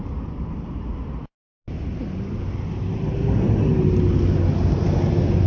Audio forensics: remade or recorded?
recorded